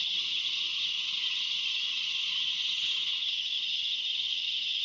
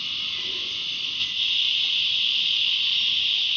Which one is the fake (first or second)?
first